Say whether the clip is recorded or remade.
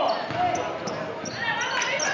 recorded